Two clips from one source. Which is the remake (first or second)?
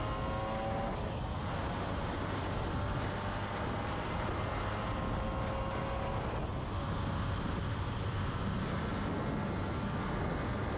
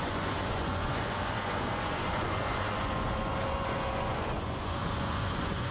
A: second